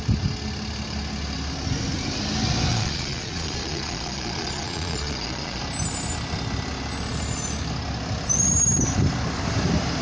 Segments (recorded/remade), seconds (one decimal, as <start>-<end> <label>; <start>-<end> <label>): 0.0-2.7 recorded; 2.7-5.6 remade; 5.6-10.0 recorded